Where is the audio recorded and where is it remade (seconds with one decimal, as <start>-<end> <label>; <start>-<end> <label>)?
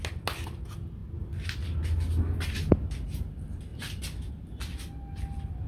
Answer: 0.0-5.7 recorded